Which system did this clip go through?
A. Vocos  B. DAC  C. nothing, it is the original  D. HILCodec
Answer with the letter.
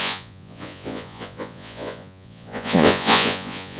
A